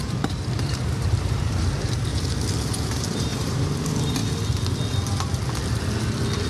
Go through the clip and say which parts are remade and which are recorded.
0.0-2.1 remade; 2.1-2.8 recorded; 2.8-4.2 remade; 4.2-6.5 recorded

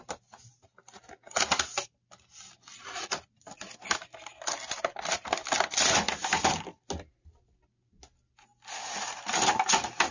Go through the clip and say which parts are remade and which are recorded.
0.0-10.1 recorded

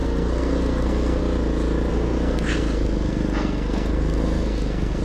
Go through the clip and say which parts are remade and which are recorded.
0.0-1.2 remade; 1.2-1.9 recorded; 1.9-5.0 remade

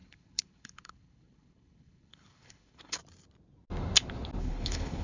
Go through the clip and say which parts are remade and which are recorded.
0.0-3.0 remade; 3.0-4.4 recorded; 4.4-5.0 remade

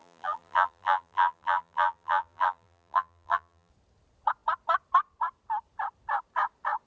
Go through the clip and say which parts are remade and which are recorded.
0.0-3.7 remade; 3.7-6.9 recorded

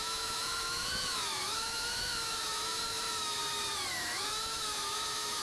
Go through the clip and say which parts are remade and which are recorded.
0.0-3.4 remade; 3.4-3.9 recorded; 3.9-5.4 remade

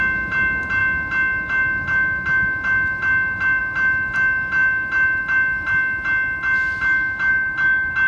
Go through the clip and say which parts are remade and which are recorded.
0.0-8.1 recorded

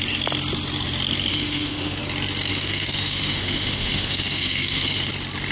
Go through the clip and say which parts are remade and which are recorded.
0.0-1.3 recorded; 1.3-2.0 remade; 2.0-2.5 recorded; 2.5-5.1 remade; 5.1-5.5 recorded